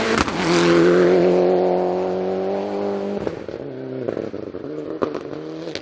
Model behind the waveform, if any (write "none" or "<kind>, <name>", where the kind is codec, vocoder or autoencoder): none